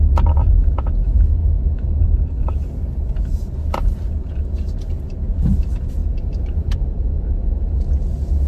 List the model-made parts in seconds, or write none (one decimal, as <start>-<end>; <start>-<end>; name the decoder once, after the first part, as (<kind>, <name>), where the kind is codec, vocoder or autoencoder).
1.4-2.0 (autoencoder, DAC-VAE)